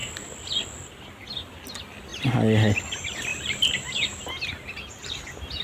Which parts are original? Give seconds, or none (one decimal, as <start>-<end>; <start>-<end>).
0.0-3.3; 4.5-5.6